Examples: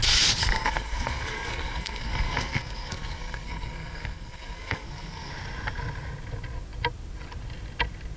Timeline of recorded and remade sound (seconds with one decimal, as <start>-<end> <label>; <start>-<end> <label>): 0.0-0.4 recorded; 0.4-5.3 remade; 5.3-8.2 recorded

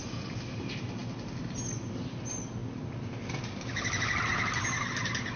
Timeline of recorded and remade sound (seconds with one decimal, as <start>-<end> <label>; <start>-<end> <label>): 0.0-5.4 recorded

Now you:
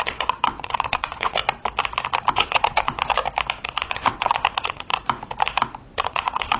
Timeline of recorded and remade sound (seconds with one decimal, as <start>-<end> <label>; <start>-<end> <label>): 0.0-1.4 remade; 1.4-2.3 recorded; 2.3-3.2 remade; 3.2-3.8 recorded; 3.8-4.9 remade; 4.9-6.0 recorded; 6.0-6.6 remade

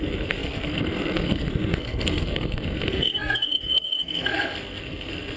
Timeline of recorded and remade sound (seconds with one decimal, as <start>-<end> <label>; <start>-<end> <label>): 0.0-5.4 remade